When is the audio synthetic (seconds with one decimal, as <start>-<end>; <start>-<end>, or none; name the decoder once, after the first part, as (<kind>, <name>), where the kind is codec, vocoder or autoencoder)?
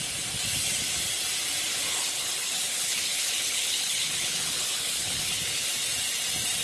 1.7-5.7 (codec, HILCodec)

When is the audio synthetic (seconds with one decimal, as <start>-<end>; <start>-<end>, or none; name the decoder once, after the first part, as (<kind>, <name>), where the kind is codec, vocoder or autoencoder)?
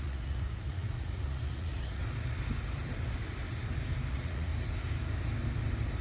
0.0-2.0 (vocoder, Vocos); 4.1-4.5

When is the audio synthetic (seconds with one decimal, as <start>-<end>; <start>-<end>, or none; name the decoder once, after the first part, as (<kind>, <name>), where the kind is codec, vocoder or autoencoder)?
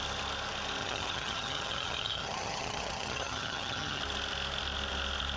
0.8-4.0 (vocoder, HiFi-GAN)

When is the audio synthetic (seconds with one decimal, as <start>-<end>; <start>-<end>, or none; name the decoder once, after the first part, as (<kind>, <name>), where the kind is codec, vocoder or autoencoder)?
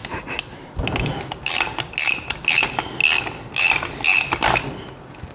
none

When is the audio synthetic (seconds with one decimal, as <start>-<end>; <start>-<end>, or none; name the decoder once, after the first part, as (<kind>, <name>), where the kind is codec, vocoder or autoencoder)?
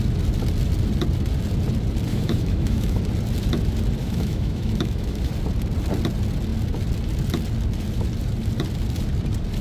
2.1-3.0 (autoencoder, DAC-VAE); 4.0-5.3